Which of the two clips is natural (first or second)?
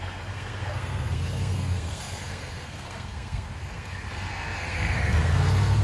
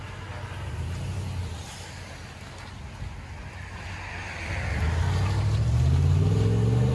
second